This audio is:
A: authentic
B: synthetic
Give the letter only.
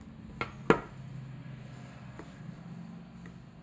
A